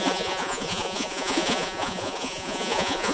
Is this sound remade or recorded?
remade